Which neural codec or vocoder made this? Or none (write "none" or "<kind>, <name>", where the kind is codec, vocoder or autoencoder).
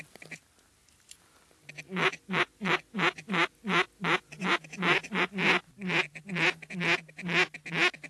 none